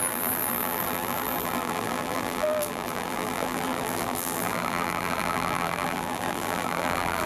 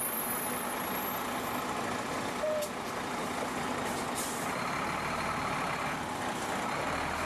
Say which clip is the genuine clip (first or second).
second